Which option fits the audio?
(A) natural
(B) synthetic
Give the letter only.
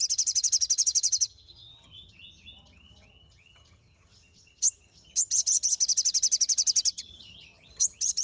B